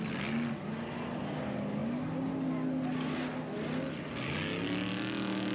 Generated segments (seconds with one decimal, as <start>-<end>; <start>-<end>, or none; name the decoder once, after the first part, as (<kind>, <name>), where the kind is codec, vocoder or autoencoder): none